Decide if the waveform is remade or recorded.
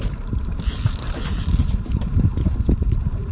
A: remade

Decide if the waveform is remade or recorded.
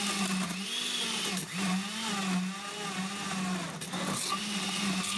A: recorded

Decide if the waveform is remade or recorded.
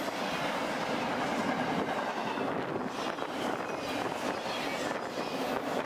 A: recorded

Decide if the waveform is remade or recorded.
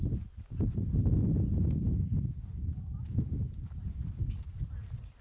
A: recorded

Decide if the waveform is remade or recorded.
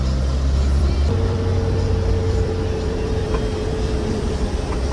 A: remade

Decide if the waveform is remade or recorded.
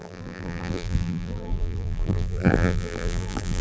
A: remade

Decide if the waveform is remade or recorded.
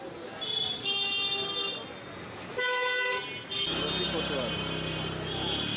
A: recorded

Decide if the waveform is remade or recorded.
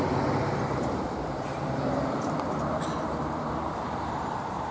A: remade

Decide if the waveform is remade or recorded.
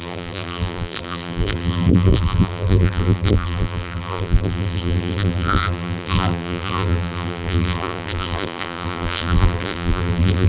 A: remade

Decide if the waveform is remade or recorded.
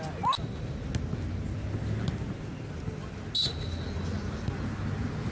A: recorded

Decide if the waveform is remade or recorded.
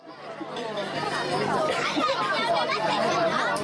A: remade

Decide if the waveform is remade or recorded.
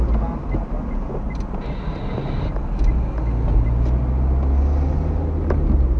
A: recorded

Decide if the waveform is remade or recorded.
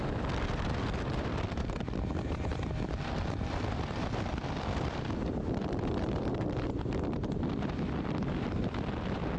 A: remade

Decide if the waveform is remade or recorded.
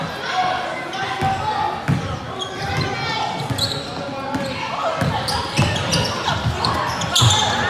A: recorded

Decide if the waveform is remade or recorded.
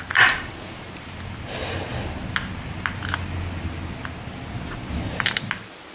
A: recorded